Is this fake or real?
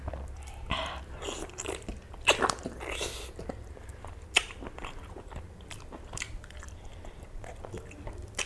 fake